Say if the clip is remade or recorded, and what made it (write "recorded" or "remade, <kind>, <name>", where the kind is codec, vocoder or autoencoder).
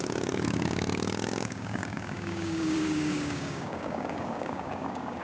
remade, codec, DAC